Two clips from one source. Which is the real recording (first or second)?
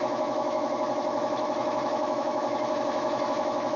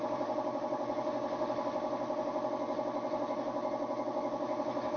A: second